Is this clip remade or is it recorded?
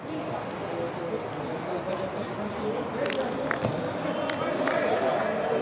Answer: recorded